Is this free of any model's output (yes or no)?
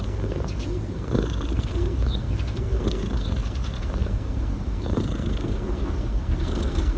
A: no